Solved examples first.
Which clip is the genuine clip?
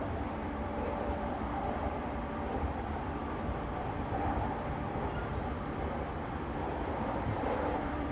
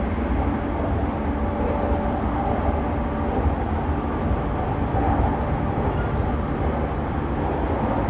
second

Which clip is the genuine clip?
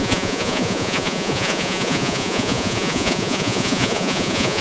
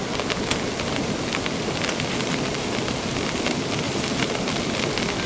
second